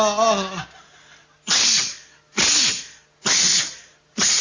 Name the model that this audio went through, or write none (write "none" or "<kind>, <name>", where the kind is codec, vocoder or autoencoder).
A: none